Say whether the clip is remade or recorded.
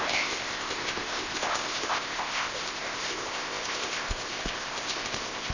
remade